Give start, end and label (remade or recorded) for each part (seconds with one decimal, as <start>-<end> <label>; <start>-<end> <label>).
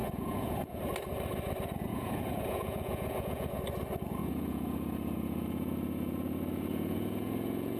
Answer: 0.0-0.8 remade; 0.8-1.9 recorded; 1.9-3.6 remade; 3.6-4.2 recorded; 4.2-7.8 remade